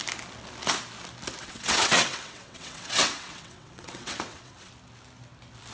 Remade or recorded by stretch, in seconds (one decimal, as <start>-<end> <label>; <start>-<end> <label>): 0.0-1.4 recorded; 1.4-4.7 remade; 4.7-5.7 recorded